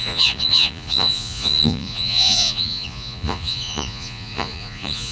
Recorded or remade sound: remade